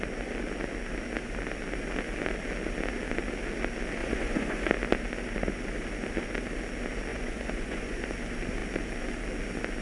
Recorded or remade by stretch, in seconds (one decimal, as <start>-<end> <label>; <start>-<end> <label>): 0.0-4.0 recorded; 4.0-4.7 remade; 4.7-7.1 recorded; 7.1-8.1 remade; 8.1-9.8 recorded